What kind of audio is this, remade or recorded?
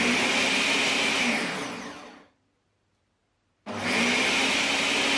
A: recorded